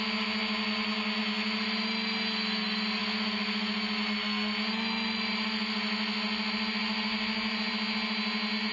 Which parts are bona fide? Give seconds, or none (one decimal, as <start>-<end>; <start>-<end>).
0.0-8.7